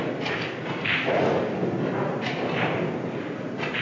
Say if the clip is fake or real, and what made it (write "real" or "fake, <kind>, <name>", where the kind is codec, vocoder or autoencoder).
real